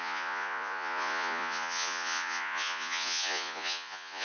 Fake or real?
fake